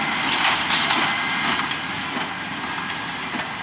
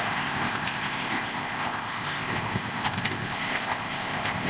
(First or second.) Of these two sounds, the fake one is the second